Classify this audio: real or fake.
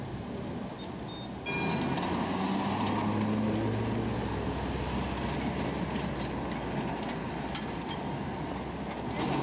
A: real